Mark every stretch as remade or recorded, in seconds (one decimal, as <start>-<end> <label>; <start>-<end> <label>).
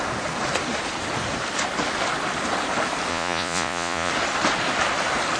0.0-3.1 recorded; 3.1-4.1 remade; 4.1-5.4 recorded